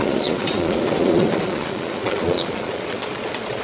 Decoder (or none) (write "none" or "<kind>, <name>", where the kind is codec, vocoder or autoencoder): vocoder, Vocos